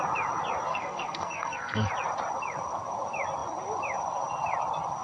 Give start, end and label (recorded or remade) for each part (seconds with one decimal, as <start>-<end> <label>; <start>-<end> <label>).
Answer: 0.0-0.7 recorded; 0.7-1.9 remade; 1.9-5.0 recorded